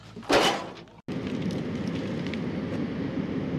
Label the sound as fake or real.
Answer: real